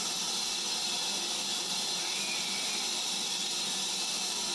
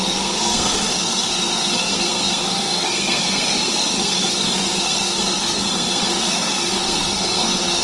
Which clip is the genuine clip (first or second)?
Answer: first